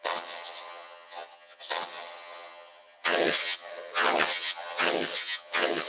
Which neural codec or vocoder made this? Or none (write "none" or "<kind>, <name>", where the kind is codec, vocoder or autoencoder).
vocoder, HiFi-GAN